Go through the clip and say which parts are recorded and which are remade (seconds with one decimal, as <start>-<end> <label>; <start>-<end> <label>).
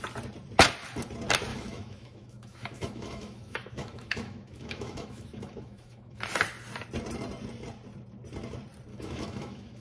0.0-1.5 recorded; 1.5-6.2 remade; 6.2-8.9 recorded; 8.9-9.8 remade